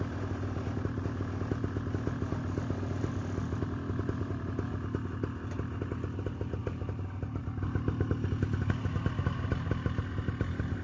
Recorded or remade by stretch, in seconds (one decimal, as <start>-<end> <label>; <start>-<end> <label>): 0.0-10.8 recorded